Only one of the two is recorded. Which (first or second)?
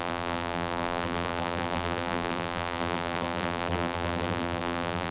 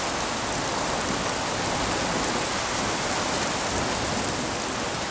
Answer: second